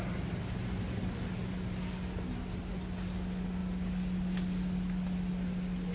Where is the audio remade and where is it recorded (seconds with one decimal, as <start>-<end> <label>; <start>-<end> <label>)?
0.0-5.9 recorded

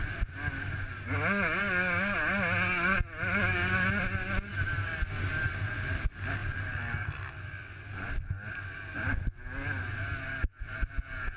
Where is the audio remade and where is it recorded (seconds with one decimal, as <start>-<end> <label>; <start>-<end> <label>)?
0.0-11.4 recorded

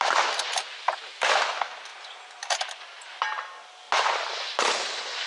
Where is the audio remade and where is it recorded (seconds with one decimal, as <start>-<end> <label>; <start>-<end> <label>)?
0.0-5.3 recorded

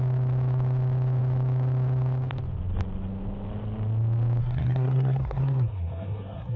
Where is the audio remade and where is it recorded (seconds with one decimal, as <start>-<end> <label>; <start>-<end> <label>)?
0.0-4.4 recorded; 4.4-6.6 remade

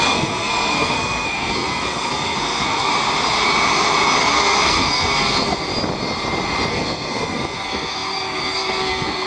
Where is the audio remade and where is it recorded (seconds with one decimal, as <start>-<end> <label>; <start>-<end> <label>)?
0.0-2.9 remade; 2.9-4.2 recorded; 4.2-5.7 remade; 5.7-6.7 recorded; 6.7-9.3 remade

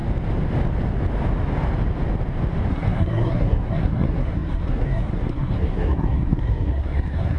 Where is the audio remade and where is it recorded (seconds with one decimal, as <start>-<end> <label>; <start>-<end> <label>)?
0.0-2.7 recorded; 2.7-7.4 remade